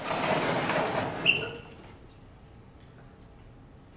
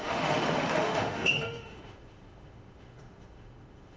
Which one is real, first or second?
first